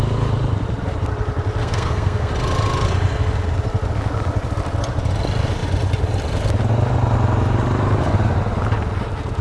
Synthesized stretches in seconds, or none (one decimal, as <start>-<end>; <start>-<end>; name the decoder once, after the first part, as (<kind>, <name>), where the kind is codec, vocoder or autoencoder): 1.6-2.3 (codec, SNAC)